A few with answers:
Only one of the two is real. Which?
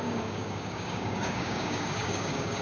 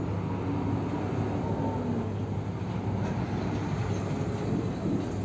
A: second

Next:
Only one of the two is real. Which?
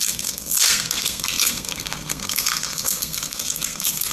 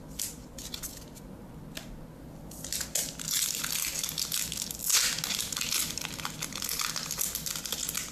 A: second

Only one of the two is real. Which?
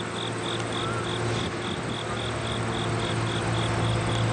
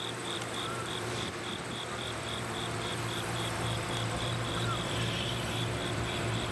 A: first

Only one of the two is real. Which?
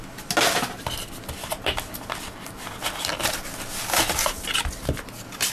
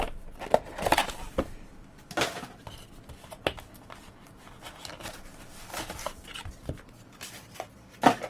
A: first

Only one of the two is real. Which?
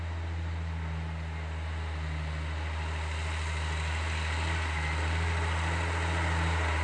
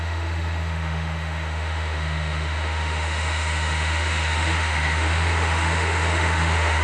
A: first